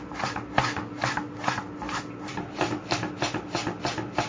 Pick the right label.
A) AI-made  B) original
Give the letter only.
B